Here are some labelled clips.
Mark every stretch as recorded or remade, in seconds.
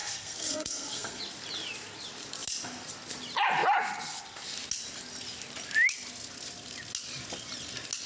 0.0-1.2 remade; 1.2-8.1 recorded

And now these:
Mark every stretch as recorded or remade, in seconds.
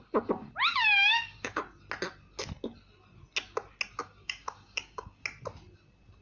0.0-0.7 recorded; 0.7-1.6 remade; 1.6-4.0 recorded; 4.0-5.2 remade; 5.2-6.2 recorded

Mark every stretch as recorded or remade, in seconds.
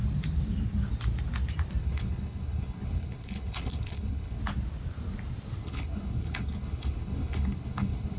0.0-1.8 recorded; 1.8-4.4 remade; 4.4-5.6 recorded; 5.6-8.2 remade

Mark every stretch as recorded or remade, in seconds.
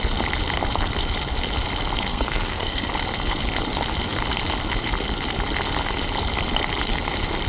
0.0-2.1 recorded; 2.1-2.9 remade; 2.9-7.5 recorded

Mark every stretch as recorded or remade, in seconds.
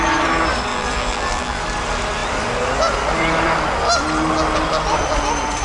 0.0-0.7 recorded; 0.7-1.6 remade; 1.6-5.6 recorded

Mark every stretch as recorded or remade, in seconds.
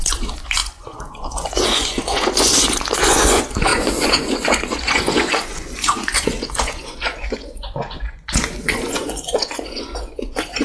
0.0-10.6 remade